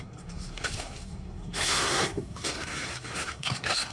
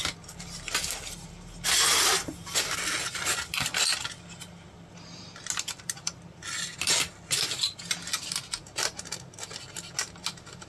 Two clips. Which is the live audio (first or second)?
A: second